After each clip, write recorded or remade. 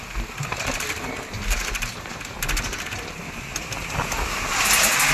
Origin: recorded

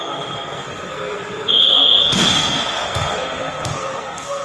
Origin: remade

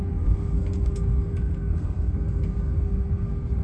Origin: remade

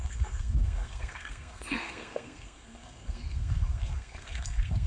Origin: remade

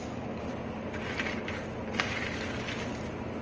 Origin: recorded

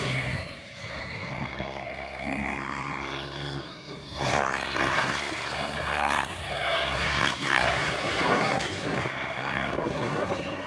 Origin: remade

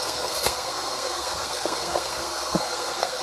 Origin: remade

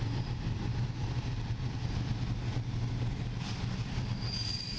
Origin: recorded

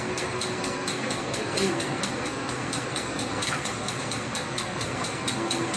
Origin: remade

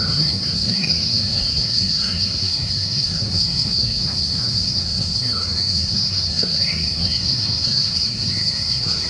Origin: remade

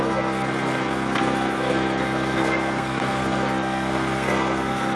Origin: remade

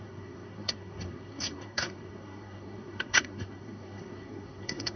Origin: remade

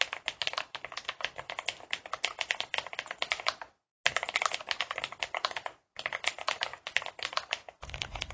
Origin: recorded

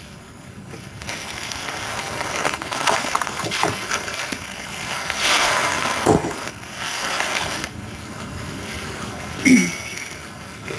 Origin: remade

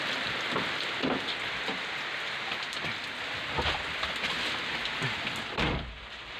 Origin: recorded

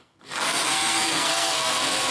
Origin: remade